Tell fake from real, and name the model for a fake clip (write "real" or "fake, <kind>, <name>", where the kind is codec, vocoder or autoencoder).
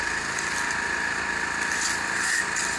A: real